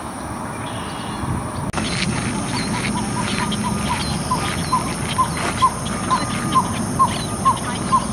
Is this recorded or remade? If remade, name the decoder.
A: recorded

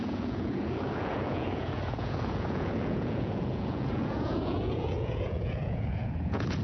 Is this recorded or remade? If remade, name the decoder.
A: remade, vocoder, Vocos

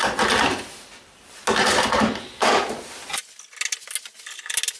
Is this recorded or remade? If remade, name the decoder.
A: recorded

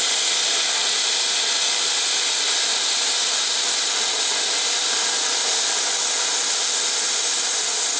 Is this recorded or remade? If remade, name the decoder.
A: recorded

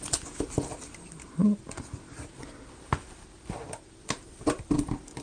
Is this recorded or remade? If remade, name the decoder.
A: recorded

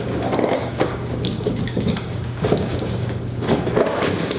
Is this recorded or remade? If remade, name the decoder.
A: remade, codec, DAC